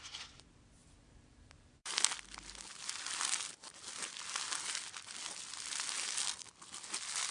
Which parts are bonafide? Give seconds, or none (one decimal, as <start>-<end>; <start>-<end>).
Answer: 0.0-0.8; 2.1-7.3